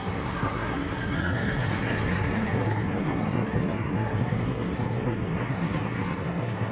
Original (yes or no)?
no